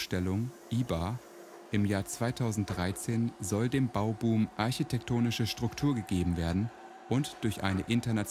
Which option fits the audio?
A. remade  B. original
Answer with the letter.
B